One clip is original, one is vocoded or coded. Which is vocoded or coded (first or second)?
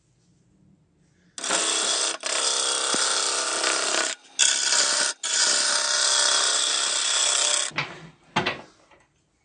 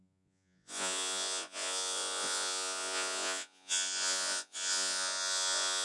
second